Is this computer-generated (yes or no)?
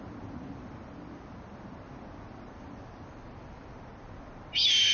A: no